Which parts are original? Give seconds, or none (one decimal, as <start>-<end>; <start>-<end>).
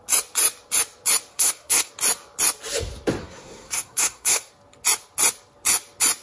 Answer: 0.0-1.3; 1.9-3.2; 4.5-6.2